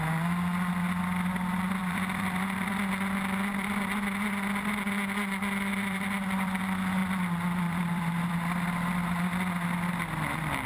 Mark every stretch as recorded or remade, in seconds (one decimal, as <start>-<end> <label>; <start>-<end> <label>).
0.0-1.8 recorded; 1.8-2.7 remade; 2.7-5.7 recorded; 5.7-6.6 remade; 6.6-7.0 recorded; 7.0-8.3 remade; 8.3-10.7 recorded